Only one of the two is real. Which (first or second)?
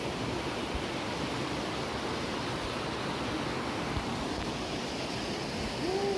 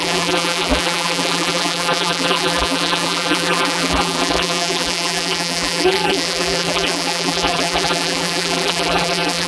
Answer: first